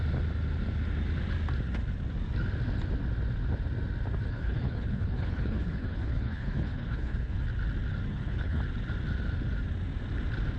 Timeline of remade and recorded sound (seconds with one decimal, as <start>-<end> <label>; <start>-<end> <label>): 0.0-4.3 recorded; 4.3-7.4 remade; 7.4-8.1 recorded; 8.1-8.6 remade; 8.6-10.6 recorded